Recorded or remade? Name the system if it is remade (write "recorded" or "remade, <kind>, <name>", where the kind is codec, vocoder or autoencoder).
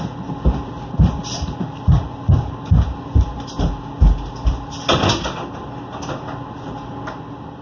recorded